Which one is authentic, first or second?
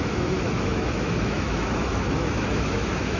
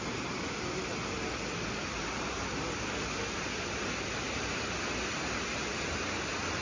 second